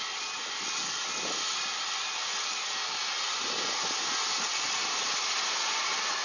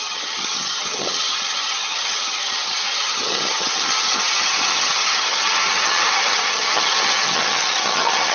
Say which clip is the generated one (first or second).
second